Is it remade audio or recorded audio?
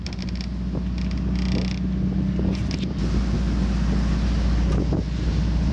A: recorded